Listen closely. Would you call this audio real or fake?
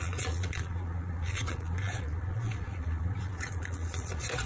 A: fake